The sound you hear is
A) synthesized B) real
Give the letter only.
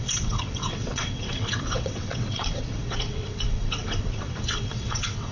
A